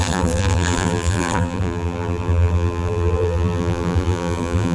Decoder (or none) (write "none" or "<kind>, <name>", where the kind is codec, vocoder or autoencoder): vocoder, BigVGAN v2